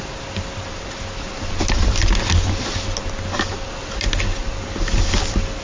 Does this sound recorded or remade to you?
recorded